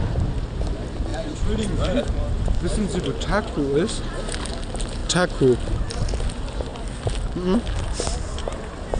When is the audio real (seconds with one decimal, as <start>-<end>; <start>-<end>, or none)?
0.0-1.1; 3.0-9.0